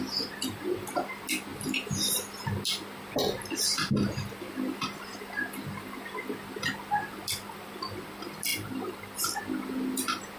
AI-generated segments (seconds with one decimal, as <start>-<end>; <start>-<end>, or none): 1.5-2.1; 8.5-9.4